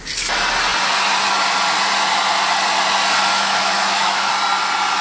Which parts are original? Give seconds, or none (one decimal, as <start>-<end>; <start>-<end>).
0.0-3.3; 4.3-5.0